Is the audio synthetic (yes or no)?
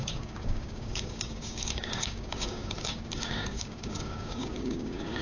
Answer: yes